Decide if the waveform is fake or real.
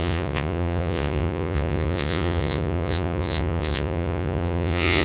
fake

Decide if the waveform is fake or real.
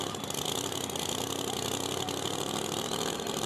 real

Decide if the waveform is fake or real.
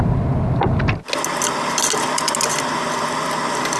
real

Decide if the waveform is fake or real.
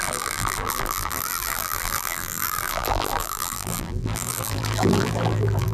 fake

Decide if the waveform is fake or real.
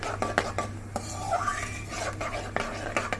real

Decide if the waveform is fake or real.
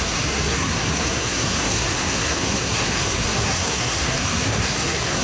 fake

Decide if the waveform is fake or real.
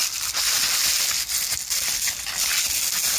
real